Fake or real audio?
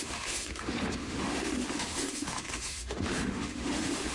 fake